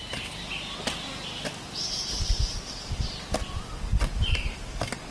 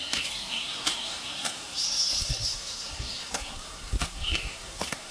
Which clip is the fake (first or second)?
second